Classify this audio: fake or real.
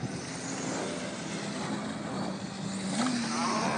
real